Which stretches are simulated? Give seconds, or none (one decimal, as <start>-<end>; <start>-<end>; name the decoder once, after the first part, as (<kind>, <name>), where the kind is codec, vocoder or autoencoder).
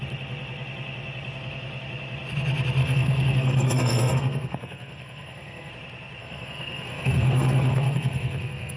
2.8-5.7 (codec, SNAC); 6.2-8.8